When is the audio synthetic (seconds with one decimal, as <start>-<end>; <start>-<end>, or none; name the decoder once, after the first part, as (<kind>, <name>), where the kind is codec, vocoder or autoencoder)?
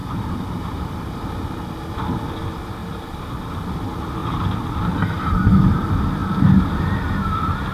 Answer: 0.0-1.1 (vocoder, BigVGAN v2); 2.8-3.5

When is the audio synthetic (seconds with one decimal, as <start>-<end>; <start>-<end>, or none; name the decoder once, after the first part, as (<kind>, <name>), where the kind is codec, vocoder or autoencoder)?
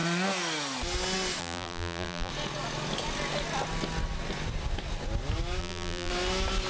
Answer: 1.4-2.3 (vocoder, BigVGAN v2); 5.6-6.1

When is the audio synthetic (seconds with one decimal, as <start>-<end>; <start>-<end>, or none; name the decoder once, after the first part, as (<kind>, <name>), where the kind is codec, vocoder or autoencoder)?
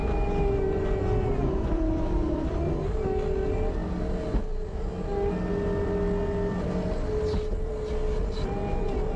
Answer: 0.0-2.5 (vocoder, BigVGAN v2)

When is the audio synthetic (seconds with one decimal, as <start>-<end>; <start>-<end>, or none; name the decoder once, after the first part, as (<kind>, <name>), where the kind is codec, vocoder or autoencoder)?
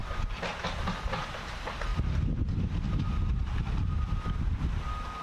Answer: 0.0-0.6 (vocoder, BigVGAN v2)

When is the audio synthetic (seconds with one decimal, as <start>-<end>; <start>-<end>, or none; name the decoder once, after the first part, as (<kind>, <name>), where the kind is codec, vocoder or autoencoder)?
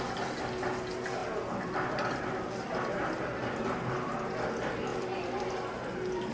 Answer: 4.9-6.3 (vocoder, BigVGAN v2)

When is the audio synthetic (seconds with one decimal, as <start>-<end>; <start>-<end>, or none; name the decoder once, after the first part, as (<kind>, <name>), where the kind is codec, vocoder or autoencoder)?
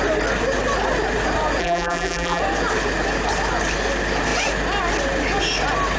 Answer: 1.6-2.4 (vocoder, BigVGAN v2)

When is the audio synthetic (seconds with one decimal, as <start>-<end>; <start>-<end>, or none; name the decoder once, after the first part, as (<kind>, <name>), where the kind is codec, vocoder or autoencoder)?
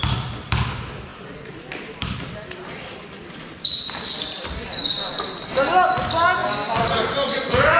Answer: 1.1-4.7 (vocoder, BigVGAN v2); 6.4-7.8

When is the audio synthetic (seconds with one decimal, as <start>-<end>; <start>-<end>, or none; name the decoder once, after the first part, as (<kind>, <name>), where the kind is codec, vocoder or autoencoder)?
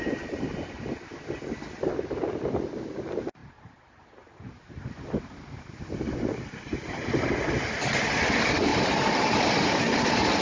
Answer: 3.4-5.7 (vocoder, BigVGAN v2); 6.7-7.3; 8.7-9.8